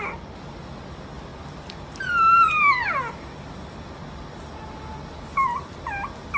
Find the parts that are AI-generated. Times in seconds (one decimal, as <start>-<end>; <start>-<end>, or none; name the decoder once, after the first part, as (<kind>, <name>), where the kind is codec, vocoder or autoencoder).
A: none